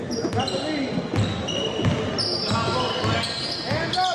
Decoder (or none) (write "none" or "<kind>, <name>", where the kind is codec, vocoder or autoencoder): none